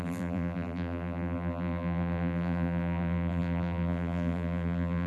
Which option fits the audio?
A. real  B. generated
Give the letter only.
B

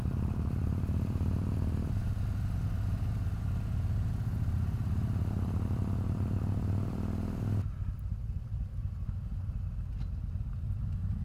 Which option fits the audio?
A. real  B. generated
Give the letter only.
A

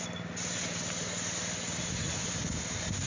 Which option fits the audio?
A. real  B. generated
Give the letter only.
A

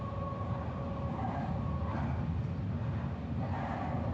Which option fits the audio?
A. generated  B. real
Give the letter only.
B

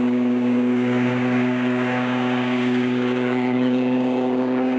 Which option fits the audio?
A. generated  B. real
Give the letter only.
A